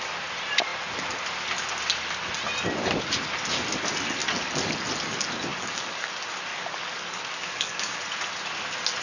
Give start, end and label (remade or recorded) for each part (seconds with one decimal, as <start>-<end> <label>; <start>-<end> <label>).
0.0-5.5 recorded; 5.5-6.1 remade; 6.1-6.5 recorded; 6.5-8.0 remade; 8.0-9.0 recorded